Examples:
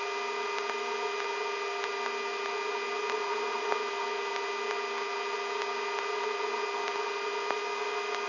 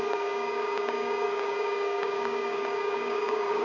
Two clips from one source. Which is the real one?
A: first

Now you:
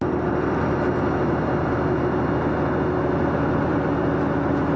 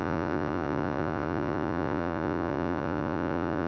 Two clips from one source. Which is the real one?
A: first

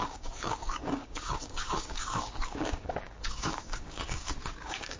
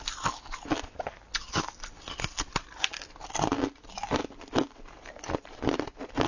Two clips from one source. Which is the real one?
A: second